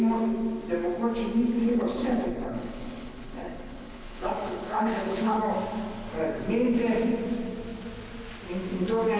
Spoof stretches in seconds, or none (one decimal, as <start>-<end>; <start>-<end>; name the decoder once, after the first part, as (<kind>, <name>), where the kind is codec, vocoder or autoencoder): 1.6-5.4 (codec, HILCodec)